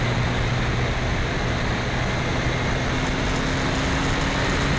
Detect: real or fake real